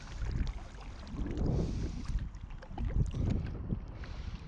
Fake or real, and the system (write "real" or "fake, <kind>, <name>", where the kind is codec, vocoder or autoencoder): real